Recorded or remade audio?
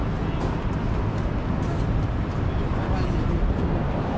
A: recorded